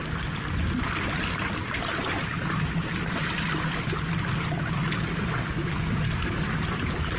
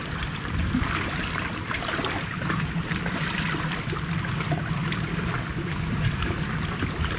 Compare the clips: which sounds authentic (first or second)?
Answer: first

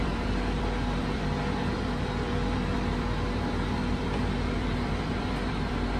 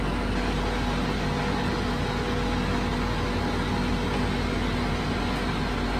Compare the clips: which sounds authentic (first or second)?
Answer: second